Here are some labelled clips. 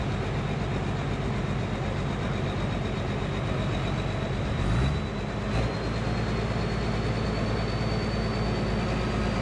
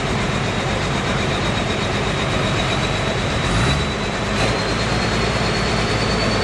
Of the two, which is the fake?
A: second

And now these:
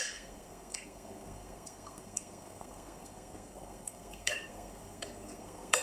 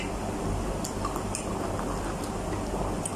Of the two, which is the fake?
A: first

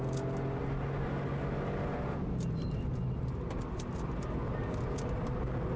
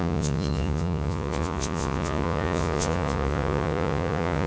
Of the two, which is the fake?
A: second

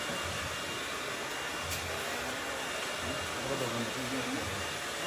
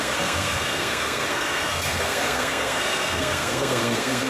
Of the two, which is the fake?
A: second